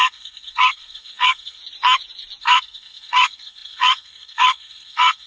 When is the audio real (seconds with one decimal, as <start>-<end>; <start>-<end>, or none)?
1.6-2.4